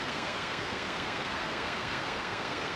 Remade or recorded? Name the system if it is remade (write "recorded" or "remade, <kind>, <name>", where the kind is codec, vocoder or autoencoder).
remade, codec, SNAC